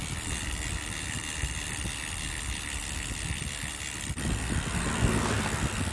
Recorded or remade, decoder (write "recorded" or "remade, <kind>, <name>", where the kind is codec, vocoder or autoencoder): recorded